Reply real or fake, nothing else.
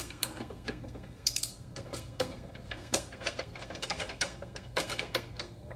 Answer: fake